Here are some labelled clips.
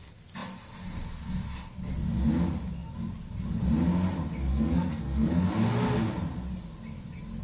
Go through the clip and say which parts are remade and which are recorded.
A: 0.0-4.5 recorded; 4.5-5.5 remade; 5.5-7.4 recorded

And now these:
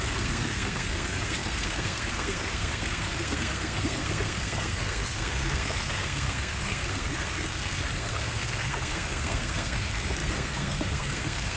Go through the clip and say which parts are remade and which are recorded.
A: 0.0-11.6 remade

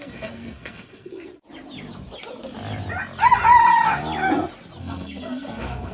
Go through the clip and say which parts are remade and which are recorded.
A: 0.0-1.3 remade; 1.3-4.8 recorded; 4.8-5.9 remade

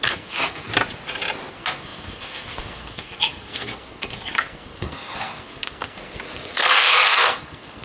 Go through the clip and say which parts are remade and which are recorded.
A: 0.0-0.7 remade; 0.7-1.5 recorded; 1.5-7.8 remade

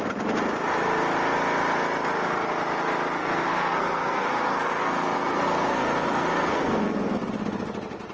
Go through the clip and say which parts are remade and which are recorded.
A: 0.0-3.2 recorded; 3.2-7.2 remade; 7.2-8.1 recorded